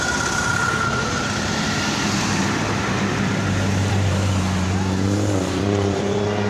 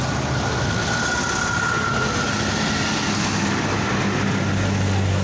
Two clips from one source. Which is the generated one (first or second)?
first